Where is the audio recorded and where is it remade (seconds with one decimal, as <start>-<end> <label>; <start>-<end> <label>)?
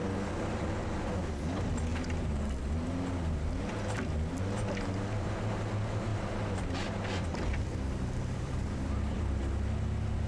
0.0-1.9 recorded; 1.9-2.4 remade; 2.4-6.1 recorded; 6.1-9.4 remade; 9.4-10.3 recorded